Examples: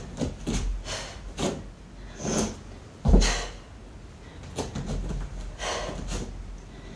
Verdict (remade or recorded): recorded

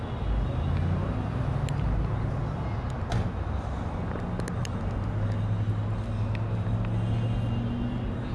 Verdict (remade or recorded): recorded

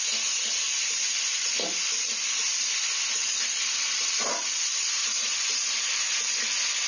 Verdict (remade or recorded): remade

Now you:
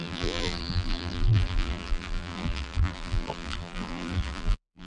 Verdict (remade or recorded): remade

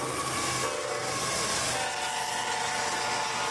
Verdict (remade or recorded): recorded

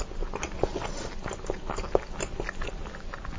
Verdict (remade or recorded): recorded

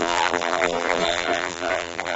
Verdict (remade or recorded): remade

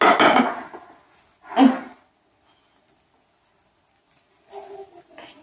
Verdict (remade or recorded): recorded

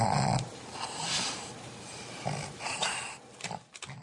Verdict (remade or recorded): recorded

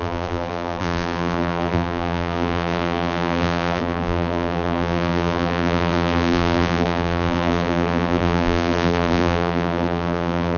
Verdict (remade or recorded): remade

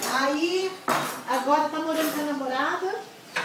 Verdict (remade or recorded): remade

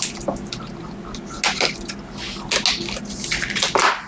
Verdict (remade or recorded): recorded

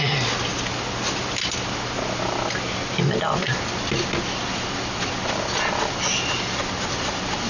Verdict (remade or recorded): recorded